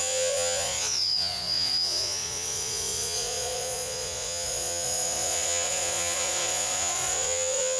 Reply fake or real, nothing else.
fake